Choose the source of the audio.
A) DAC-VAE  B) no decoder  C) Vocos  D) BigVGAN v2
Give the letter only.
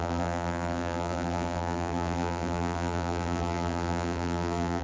D